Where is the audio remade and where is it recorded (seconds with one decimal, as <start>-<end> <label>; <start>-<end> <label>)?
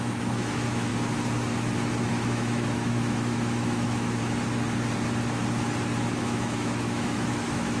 0.0-0.9 remade; 0.9-2.1 recorded; 2.1-4.2 remade; 4.2-6.2 recorded; 6.2-7.8 remade